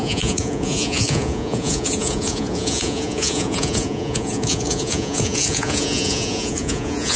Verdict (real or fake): fake